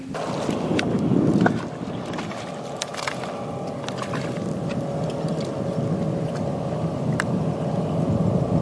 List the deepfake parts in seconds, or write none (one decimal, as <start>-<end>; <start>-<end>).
none